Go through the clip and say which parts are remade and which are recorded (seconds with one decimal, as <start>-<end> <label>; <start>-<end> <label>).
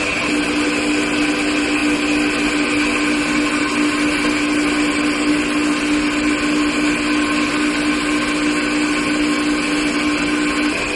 0.0-11.0 recorded